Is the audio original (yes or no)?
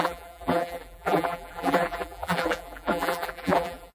no